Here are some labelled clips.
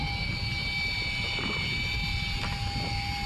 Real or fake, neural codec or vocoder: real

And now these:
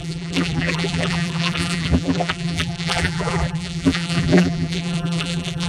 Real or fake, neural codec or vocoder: fake, vocoder, BigVGAN v2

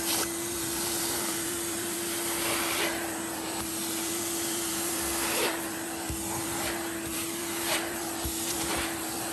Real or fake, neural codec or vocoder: fake, vocoder, BigVGAN v2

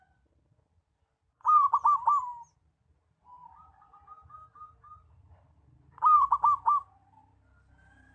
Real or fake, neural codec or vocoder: real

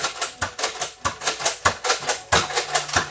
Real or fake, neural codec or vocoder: real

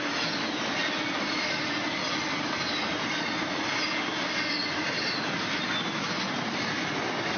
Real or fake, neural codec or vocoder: real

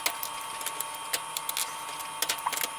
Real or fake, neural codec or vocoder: real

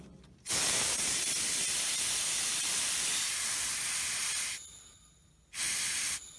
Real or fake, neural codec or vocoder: fake, vocoder, BigVGAN v2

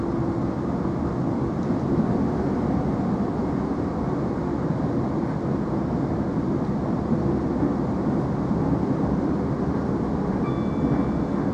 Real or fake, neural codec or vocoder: real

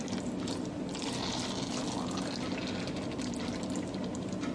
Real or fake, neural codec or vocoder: real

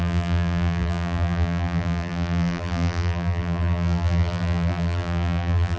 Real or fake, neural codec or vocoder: fake, vocoder, BigVGAN v2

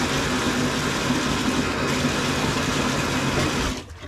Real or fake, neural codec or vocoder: real